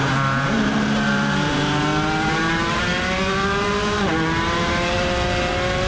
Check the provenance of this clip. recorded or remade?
remade